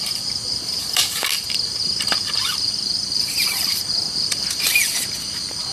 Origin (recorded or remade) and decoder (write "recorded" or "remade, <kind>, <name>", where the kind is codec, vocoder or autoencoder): remade, vocoder, BigVGAN v2